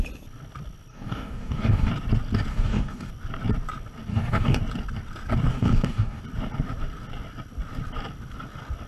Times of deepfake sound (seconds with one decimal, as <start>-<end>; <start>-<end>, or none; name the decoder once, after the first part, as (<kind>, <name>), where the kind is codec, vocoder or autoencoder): 0.9-1.9 (codec, DAC); 2.5-3.1; 4.1-4.6; 5.5-6.2